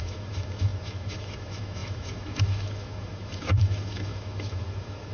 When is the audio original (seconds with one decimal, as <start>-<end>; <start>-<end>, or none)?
none